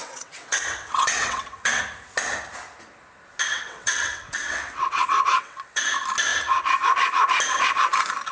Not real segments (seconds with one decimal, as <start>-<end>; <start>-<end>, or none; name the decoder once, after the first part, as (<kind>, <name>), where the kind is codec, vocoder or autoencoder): 0.0-1.8 (vocoder, WaveNeXt); 3.5-5.8